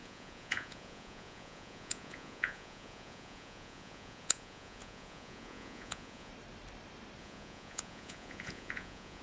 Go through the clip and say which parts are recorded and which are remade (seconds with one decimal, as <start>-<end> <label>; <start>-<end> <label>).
0.0-6.3 remade; 6.3-7.2 recorded; 7.2-9.2 remade